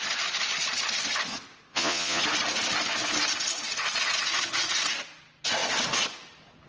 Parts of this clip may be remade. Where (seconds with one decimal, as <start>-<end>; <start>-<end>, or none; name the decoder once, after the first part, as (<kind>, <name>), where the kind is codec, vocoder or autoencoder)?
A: 1.7-2.2 (vocoder, Vocos)

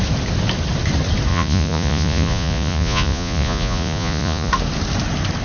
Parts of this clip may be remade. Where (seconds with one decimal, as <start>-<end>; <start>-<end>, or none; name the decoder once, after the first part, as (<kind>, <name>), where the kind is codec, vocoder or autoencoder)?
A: 1.3-4.5 (vocoder, Vocos)

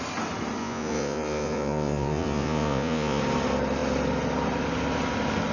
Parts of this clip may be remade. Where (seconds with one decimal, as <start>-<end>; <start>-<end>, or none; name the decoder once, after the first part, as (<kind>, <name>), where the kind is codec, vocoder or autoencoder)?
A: 0.6-3.2 (vocoder, Vocos)

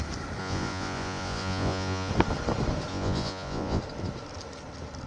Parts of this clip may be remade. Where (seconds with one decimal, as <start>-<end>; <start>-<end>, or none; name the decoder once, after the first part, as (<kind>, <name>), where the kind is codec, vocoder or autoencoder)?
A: 0.4-2.1 (vocoder, Vocos); 2.9-3.8

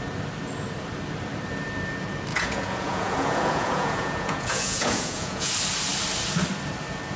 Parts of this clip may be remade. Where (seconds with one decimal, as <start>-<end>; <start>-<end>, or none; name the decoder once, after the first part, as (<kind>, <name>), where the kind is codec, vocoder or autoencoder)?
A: 2.3-5.5 (vocoder, Vocos)

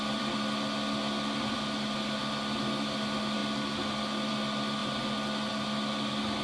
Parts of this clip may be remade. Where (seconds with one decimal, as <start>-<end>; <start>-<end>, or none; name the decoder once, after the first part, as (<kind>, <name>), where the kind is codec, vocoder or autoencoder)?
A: none

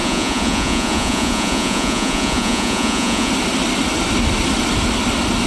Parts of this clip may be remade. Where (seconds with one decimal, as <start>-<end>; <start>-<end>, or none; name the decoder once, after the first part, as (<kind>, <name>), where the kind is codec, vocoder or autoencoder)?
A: 0.0-3.3 (vocoder, Vocos)

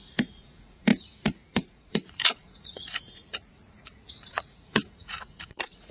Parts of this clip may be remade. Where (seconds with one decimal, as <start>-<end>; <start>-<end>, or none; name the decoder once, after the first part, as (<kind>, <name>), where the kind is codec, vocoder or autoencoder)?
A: 0.0-5.9 (vocoder, Vocos)